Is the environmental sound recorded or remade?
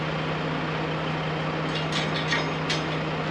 recorded